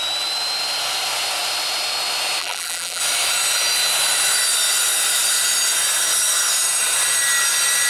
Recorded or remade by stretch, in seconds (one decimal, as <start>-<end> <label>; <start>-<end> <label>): 0.0-2.4 recorded; 2.4-3.0 remade; 3.0-7.9 recorded